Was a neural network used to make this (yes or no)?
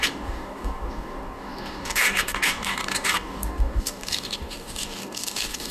yes